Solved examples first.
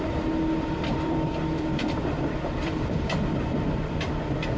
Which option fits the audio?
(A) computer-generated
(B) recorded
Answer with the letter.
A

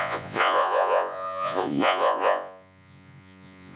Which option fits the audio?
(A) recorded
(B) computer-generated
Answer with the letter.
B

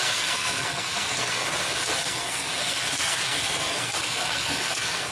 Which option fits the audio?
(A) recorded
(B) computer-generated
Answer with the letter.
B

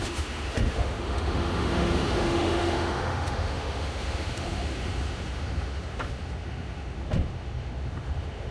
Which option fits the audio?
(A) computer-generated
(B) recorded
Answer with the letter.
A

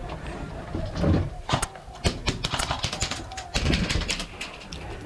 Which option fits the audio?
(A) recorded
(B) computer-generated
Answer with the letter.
A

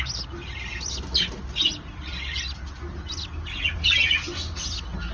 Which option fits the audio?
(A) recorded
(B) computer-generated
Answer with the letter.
A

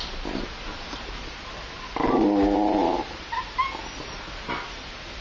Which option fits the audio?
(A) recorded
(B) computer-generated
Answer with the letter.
A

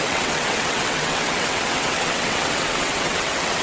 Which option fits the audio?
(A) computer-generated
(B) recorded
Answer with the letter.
A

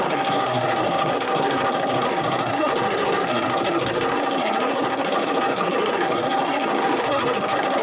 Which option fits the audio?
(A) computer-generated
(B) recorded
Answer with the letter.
A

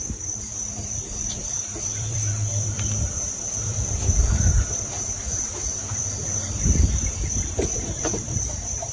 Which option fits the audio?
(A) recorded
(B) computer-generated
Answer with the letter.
B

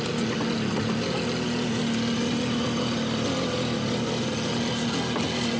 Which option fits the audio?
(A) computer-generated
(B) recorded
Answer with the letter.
B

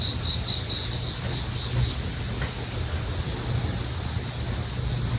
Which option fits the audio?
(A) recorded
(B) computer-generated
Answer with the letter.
A